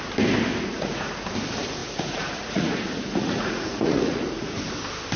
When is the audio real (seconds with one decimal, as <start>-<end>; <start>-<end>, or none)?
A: 0.0-0.5; 1.1-1.8; 4.6-5.2